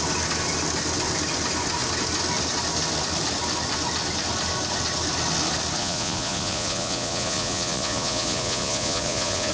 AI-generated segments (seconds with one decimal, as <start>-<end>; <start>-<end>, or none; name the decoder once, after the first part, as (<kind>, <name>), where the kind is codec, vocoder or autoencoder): 5.8-9.5 (vocoder, Vocos)

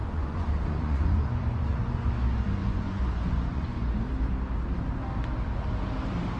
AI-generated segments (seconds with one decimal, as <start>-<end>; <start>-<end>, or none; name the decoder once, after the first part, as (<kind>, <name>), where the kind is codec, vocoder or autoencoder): 0.0-2.1 (vocoder, Vocos); 2.6-3.9

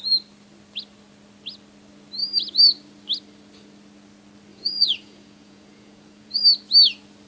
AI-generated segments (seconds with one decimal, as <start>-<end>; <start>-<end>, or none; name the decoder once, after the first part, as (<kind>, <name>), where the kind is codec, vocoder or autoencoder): 4.5-6.4 (vocoder, Vocos)